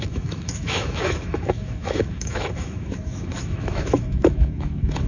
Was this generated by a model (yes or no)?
yes